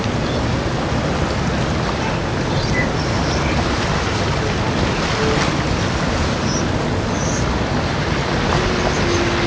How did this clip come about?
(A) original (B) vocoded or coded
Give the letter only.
A